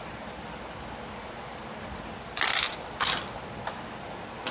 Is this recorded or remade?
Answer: recorded